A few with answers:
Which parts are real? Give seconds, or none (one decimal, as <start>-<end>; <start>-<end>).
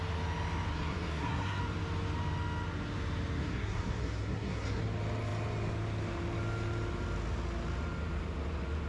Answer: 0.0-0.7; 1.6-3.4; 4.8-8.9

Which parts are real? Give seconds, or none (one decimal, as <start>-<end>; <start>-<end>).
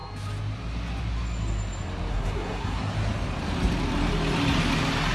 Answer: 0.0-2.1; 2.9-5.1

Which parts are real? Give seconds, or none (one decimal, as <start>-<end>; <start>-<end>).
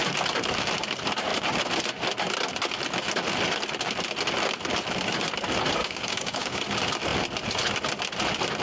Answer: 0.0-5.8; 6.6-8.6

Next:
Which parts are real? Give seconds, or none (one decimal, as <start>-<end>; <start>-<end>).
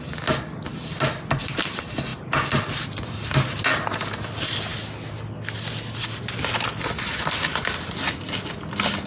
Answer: 0.0-9.1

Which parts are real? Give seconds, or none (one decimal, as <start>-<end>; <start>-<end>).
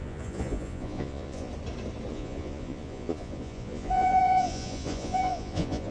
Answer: 1.5-2.1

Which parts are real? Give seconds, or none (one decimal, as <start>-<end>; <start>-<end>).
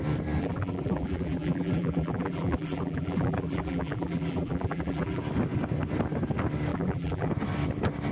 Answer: 0.0-0.4; 5.2-6.7; 7.3-8.1